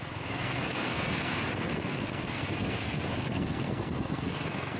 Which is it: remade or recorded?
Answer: remade